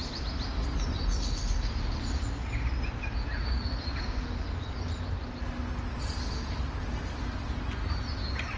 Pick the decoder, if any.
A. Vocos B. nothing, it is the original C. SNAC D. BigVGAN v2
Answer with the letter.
B